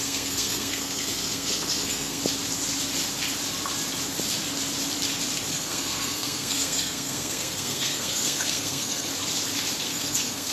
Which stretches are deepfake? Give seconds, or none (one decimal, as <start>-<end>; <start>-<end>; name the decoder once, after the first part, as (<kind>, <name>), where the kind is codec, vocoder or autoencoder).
0.0-2.2 (codec, SNAC); 5.5-9.1; 9.8-10.5